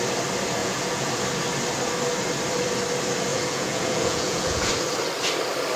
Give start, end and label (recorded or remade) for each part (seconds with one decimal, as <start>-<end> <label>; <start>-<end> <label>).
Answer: 0.0-0.6 recorded; 0.6-1.1 remade; 1.1-3.3 recorded; 3.3-4.7 remade; 4.7-5.8 recorded